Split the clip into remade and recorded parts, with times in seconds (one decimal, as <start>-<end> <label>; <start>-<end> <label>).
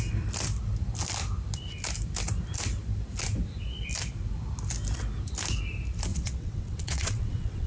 0.0-6.1 recorded; 6.1-7.7 remade